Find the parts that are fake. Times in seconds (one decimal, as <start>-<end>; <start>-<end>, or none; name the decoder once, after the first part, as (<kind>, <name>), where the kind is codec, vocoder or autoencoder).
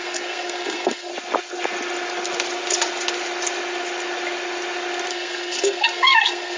0.0-1.1 (codec, SNAC); 5.1-6.6